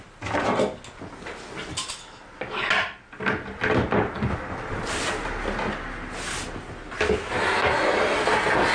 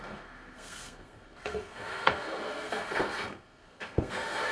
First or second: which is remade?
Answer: second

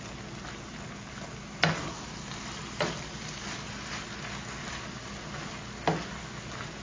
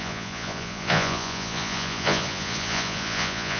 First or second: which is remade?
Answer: second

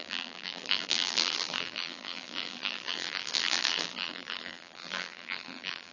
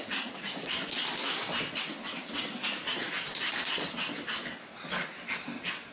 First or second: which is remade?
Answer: first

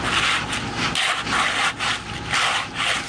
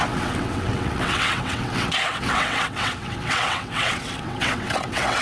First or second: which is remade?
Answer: second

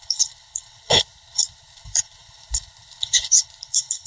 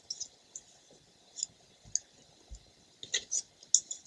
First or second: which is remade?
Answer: first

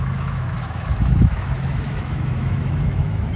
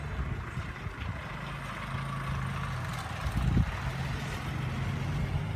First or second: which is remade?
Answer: first